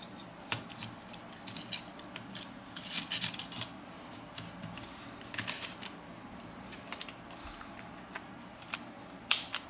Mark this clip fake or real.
real